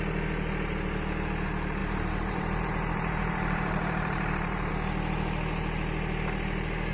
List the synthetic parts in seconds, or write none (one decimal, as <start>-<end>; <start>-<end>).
1.8-4.7

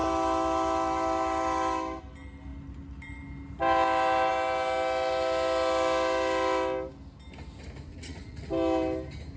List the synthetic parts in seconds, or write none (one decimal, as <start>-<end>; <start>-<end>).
7.9-8.5